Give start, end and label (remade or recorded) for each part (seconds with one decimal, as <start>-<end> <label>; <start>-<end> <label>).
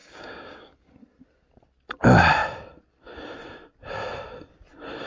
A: 0.0-0.6 remade; 0.6-5.1 recorded